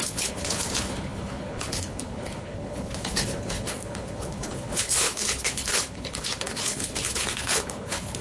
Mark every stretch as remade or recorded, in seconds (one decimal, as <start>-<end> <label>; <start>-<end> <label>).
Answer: 0.0-8.2 remade